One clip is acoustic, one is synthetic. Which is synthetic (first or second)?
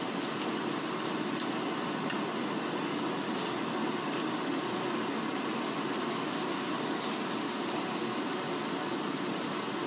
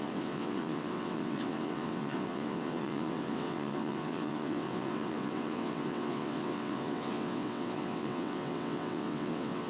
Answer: second